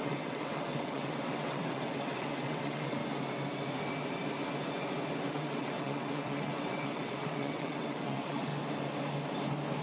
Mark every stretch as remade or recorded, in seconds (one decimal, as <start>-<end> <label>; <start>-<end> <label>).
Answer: 0.0-3.0 remade; 3.0-5.3 recorded; 5.3-8.5 remade; 8.5-9.8 recorded